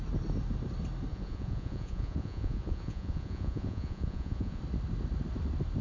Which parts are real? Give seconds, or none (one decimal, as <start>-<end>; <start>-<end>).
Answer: 0.0-1.1; 4.6-5.8